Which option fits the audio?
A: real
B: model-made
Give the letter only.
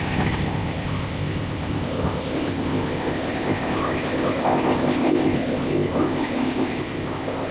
B